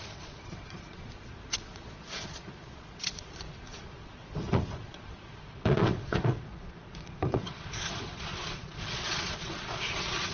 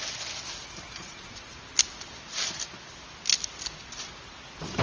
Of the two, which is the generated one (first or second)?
first